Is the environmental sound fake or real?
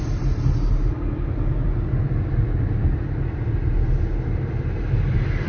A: real